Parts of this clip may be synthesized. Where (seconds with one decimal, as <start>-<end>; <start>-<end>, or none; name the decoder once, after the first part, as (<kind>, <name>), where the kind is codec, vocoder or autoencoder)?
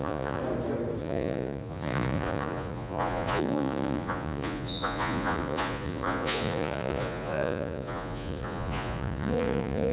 0.0-0.4 (vocoder, Vocos); 1.0-9.9